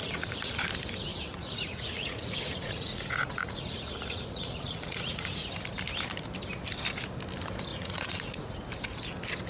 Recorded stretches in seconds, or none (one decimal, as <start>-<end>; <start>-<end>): 0.6-1.1; 5.5-7.7; 8.5-9.5